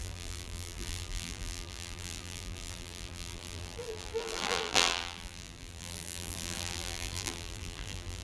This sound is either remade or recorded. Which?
remade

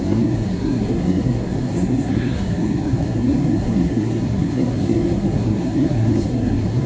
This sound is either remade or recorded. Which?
remade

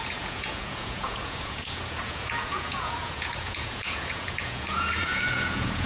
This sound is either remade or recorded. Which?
remade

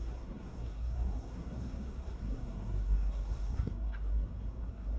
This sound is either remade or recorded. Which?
remade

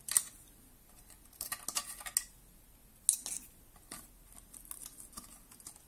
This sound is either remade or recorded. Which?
recorded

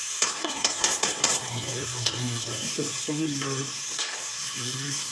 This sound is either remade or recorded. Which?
remade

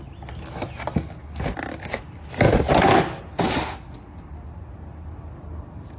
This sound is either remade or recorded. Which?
recorded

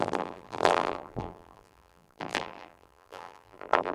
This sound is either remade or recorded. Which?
remade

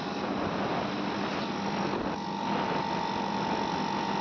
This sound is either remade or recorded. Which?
recorded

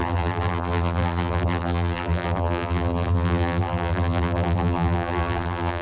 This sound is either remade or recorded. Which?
remade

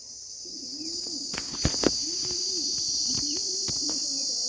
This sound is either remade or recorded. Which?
recorded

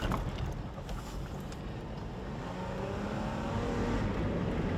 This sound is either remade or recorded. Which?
recorded